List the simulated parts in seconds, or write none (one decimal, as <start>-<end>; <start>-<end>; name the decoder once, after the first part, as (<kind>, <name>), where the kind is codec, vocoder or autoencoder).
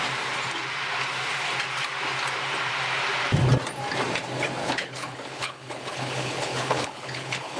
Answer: 4.6-7.6 (codec, HILCodec)